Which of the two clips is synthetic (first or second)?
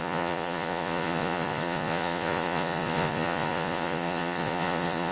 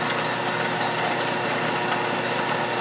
first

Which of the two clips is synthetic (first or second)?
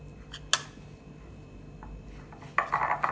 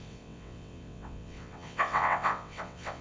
second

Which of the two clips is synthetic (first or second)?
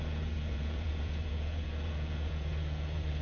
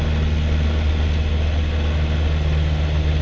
first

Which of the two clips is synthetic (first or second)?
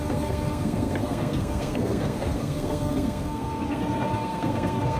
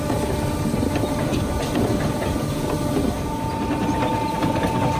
first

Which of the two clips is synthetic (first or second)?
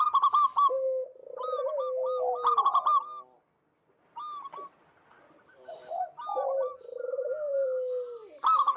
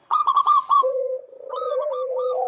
second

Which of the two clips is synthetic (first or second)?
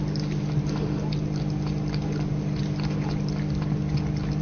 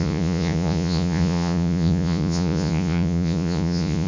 second